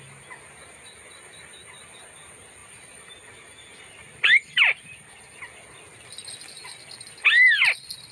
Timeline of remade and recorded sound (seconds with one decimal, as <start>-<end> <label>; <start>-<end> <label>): 0.0-2.6 recorded; 2.6-5.2 remade; 5.2-5.9 recorded; 5.9-6.9 remade; 6.9-8.1 recorded